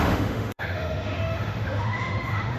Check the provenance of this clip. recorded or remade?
remade